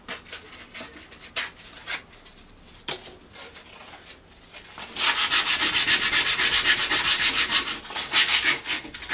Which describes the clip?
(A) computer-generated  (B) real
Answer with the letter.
B